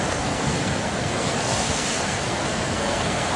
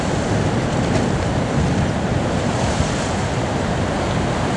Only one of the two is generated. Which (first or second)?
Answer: first